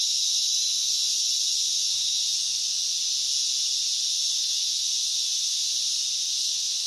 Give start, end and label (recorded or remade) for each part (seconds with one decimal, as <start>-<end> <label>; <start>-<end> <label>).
0.0-2.6 remade; 2.6-4.1 recorded; 4.1-5.7 remade; 5.7-6.4 recorded; 6.4-6.9 remade